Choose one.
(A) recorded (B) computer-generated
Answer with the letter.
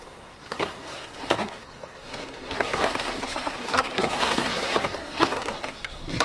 B